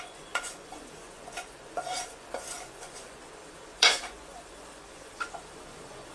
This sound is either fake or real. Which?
fake